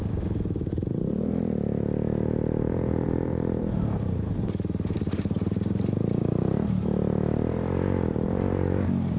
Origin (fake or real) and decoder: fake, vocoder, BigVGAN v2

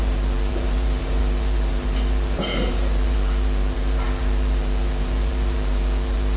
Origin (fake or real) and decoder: fake, vocoder, BigVGAN v2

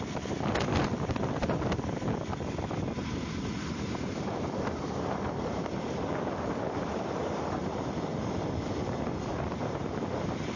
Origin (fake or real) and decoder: fake, vocoder, BigVGAN v2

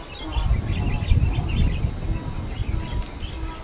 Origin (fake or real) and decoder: real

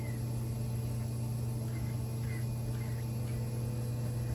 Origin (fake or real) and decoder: real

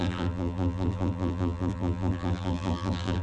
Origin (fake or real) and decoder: fake, vocoder, BigVGAN v2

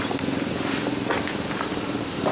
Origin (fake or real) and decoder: real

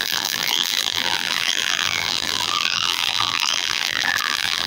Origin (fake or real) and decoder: fake, vocoder, BigVGAN v2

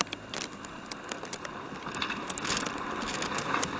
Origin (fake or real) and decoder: real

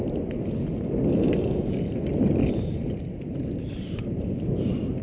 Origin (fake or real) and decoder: real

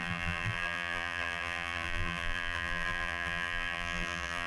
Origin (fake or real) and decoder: fake, vocoder, BigVGAN v2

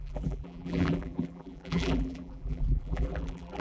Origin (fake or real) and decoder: fake, vocoder, BigVGAN v2